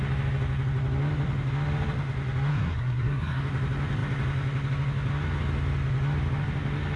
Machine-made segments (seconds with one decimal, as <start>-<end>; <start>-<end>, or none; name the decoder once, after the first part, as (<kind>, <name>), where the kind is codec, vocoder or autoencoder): 2.5-3.4 (codec, SNAC)